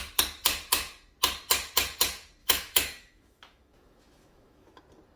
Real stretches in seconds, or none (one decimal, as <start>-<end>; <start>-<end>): 0.0-2.4; 4.8-5.2